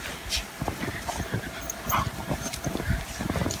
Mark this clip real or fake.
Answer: real